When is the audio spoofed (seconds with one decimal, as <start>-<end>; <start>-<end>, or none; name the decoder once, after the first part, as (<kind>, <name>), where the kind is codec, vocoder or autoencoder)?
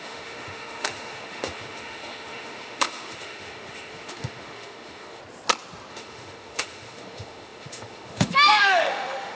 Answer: 0.0-5.2 (autoencoder, DAC-VAE); 5.9-9.3